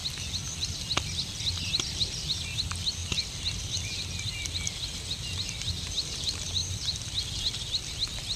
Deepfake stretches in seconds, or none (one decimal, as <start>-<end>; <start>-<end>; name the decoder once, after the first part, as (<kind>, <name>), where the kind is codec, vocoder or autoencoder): 1.7-3.0 (vocoder, BigVGAN v2); 3.8-6.6